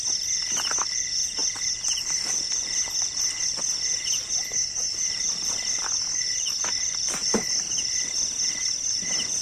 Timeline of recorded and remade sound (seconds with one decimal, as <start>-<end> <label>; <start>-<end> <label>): 0.0-9.4 recorded